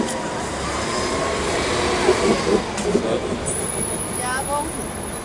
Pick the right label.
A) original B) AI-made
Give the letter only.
A